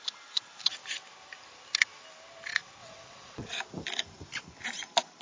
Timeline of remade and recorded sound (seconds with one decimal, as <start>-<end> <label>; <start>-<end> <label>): 0.0-2.8 recorded; 2.8-3.6 remade; 3.6-5.2 recorded